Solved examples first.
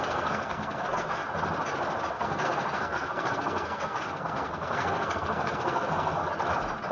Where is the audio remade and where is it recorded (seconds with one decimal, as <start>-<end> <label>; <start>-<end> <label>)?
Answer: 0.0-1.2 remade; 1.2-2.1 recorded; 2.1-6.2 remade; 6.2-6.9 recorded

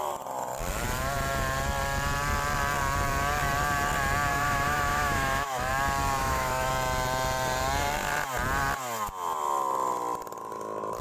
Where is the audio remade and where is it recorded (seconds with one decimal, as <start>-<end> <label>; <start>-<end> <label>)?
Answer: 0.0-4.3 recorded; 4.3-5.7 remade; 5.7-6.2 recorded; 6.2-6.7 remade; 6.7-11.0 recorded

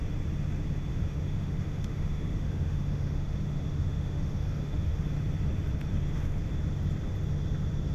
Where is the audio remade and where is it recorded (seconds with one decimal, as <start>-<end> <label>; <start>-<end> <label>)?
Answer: 0.0-0.9 recorded; 0.9-5.1 remade; 5.1-5.9 recorded; 5.9-6.4 remade; 6.4-7.9 recorded

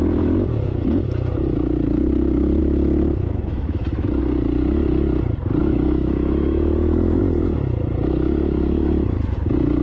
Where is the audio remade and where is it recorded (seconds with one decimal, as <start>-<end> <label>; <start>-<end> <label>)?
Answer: 0.0-2.6 recorded; 2.6-4.2 remade; 4.2-5.6 recorded; 5.6-7.2 remade; 7.2-9.8 recorded

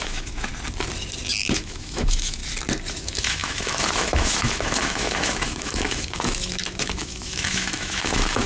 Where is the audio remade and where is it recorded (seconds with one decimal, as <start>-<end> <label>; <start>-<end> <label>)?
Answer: 0.0-0.5 remade; 0.5-1.3 recorded; 1.3-2.4 remade; 2.4-2.9 recorded; 2.9-8.5 remade

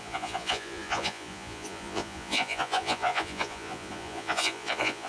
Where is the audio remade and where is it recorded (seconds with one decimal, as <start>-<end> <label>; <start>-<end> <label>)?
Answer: 0.0-5.1 remade

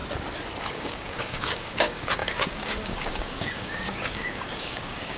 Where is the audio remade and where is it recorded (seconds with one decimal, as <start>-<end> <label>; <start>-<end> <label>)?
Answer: 0.0-0.7 recorded; 0.7-5.2 remade